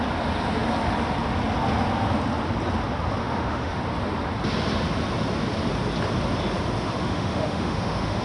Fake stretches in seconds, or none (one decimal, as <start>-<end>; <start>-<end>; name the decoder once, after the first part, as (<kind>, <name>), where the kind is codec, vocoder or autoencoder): 3.2-3.8 (autoencoder, DAC-VAE); 7.0-8.2